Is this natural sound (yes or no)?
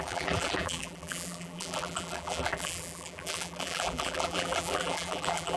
no